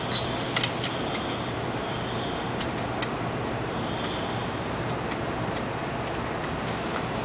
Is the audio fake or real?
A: real